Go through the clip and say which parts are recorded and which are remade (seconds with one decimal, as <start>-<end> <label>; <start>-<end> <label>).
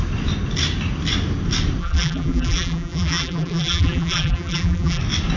0.0-1.8 recorded; 1.8-5.0 remade; 5.0-5.4 recorded